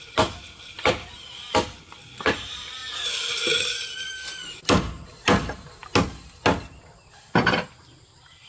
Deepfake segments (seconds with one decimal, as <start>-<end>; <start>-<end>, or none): none